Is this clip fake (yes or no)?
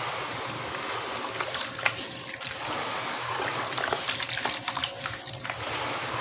no